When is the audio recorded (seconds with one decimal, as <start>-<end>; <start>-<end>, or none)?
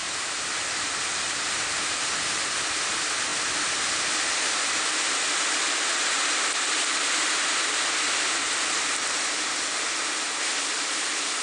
0.0-11.4